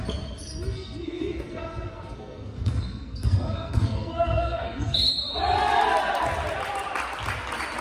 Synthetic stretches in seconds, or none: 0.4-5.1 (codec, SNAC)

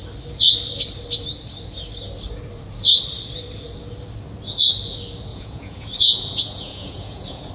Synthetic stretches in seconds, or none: 5.3-7.5 (vocoder, Vocos)

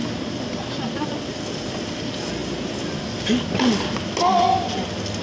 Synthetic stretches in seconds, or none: none

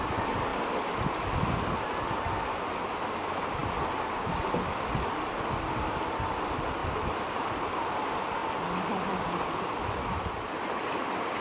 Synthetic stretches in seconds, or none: 6.8-7.5 (vocoder, BigVGAN v2); 8.4-10.5

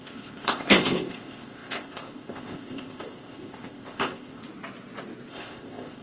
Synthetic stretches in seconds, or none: 0.0-4.4 (codec, ZipCodec); 5.3-6.0

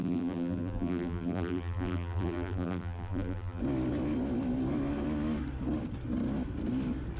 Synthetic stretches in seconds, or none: 0.0-3.6 (vocoder, BigVGAN v2)

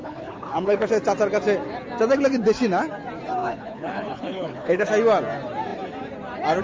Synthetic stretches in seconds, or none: 0.0-0.9 (codec, HILCodec); 3.4-4.9